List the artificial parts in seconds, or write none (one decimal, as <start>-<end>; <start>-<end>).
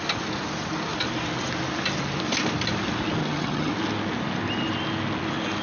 3.2-3.7